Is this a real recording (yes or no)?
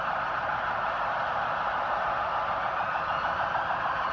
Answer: yes